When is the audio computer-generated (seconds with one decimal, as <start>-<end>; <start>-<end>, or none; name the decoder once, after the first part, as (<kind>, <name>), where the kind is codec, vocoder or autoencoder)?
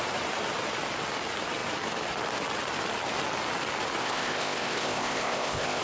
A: 4.0-5.8 (codec, ZipCodec)